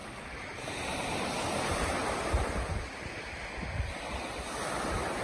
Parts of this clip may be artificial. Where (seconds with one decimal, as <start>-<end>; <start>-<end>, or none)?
0.0-3.1